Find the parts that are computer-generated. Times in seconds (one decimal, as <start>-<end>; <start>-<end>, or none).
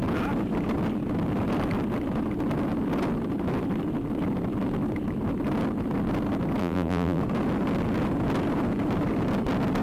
6.6-7.2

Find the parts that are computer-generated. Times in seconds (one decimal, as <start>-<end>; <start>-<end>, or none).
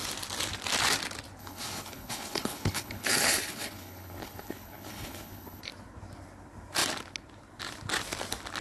1.4-5.6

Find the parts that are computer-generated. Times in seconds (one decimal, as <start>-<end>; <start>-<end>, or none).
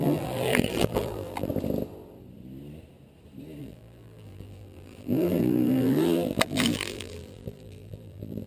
0.0-1.5; 3.6-8.5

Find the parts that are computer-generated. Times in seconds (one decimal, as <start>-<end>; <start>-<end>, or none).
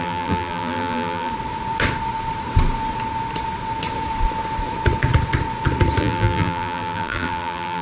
0.0-1.3; 6.0-7.8